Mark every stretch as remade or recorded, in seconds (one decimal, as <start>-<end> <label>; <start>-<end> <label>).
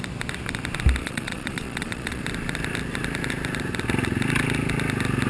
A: 0.0-1.0 recorded; 1.0-2.2 remade; 2.2-5.3 recorded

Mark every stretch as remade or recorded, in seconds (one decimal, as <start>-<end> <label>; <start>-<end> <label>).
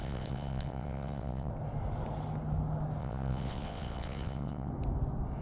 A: 0.0-1.5 remade; 1.5-3.0 recorded; 3.0-4.7 remade; 4.7-5.4 recorded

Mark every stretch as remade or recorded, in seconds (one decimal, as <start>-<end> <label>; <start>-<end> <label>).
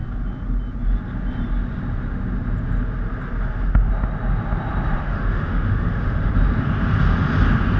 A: 0.0-5.0 recorded; 5.0-6.3 remade; 6.3-7.8 recorded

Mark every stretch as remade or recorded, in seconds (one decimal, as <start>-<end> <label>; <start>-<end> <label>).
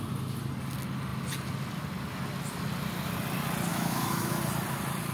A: 0.0-3.7 recorded; 3.7-4.4 remade; 4.4-5.1 recorded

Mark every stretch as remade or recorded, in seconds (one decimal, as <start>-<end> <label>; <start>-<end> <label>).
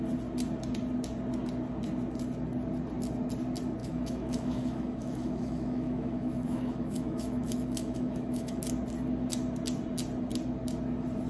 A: 0.0-3.8 recorded; 3.8-8.6 remade; 8.6-11.3 recorded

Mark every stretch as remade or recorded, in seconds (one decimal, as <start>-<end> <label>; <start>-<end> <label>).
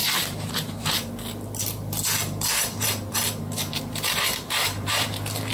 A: 0.0-1.1 remade; 1.1-2.2 recorded; 2.2-5.5 remade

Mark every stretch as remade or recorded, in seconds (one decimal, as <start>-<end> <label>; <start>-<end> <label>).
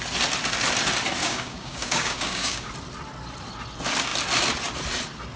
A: 0.0-1.2 recorded; 1.2-2.7 remade; 2.7-5.4 recorded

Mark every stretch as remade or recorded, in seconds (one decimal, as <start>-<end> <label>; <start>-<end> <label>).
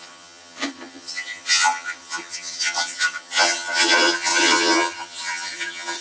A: 0.0-6.0 remade